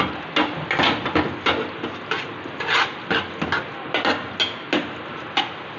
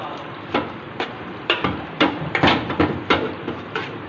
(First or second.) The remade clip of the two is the second